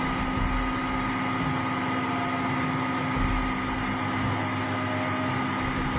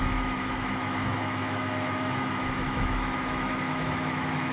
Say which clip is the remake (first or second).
second